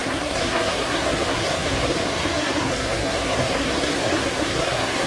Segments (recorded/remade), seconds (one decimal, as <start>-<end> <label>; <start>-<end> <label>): 0.0-5.1 remade